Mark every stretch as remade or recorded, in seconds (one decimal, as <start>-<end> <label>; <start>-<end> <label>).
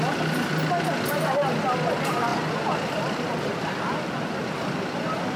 0.0-5.4 recorded